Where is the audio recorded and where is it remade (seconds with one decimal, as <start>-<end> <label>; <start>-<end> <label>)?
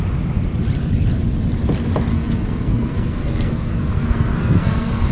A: 0.0-2.1 recorded; 2.1-5.1 remade